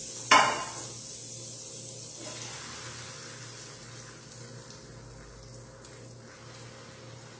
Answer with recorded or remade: recorded